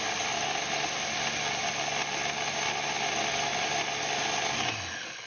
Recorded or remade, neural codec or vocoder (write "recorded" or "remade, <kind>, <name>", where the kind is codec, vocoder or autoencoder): recorded